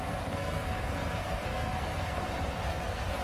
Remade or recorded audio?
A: remade